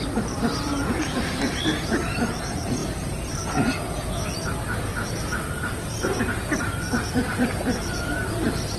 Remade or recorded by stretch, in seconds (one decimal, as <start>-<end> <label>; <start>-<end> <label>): 0.0-2.8 remade; 2.8-6.9 recorded; 6.9-8.8 remade